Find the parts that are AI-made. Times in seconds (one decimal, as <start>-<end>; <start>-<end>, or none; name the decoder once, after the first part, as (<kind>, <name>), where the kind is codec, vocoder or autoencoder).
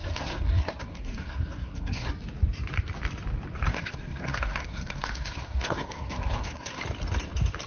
0.0-2.1 (codec, SNAC); 3.7-6.8